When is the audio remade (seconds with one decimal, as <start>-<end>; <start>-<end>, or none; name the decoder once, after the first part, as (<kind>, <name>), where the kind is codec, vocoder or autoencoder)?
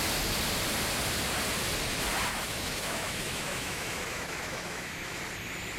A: 2.3-5.2 (autoencoder, DAC-VAE)